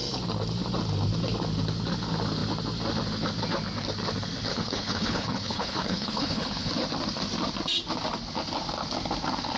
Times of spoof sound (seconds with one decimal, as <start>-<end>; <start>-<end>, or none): 4.5-6.7